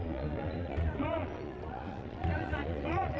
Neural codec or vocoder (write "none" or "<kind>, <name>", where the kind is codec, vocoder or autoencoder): vocoder, Vocos